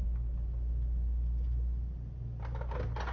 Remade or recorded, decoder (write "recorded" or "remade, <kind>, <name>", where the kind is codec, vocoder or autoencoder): recorded